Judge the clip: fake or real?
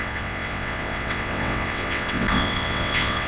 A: fake